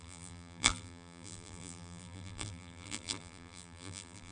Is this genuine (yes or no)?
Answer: no